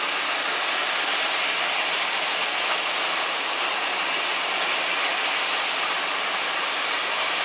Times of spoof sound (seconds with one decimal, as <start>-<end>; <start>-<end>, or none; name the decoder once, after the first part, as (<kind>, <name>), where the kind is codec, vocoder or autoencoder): none